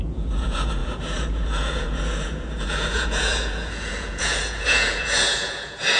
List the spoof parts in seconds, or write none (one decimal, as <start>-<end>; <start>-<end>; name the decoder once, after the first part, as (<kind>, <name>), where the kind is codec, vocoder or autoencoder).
0.0-6.0 (vocoder, Vocos)